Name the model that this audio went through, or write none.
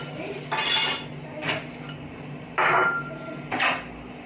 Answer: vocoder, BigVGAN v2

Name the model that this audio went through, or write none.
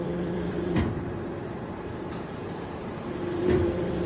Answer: vocoder, BigVGAN v2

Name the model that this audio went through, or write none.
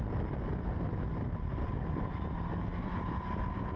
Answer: none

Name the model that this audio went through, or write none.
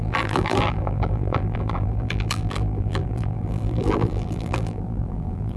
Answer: vocoder, BigVGAN v2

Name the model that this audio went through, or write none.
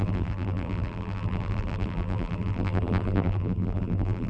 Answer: vocoder, BigVGAN v2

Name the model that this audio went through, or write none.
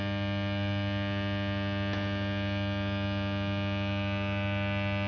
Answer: none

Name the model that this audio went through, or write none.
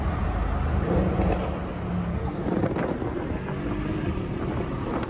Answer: none